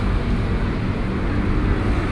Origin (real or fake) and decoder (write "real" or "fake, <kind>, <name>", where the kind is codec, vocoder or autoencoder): real